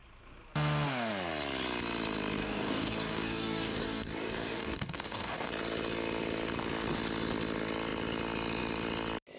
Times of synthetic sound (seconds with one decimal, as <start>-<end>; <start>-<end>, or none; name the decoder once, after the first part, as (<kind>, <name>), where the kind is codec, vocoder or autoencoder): 2.4-5.5 (codec, DAC)